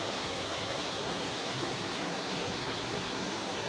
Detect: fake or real fake